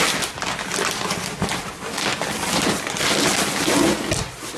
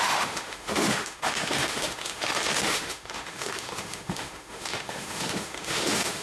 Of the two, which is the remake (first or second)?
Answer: second